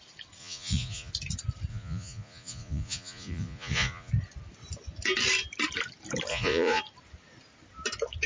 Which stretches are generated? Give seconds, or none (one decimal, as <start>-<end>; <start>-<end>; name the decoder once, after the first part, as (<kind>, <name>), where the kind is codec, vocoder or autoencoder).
0.4-1.1 (vocoder, Vocos); 1.7-4.1; 6.3-6.8